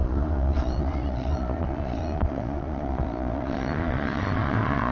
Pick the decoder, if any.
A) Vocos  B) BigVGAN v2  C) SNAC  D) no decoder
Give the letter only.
A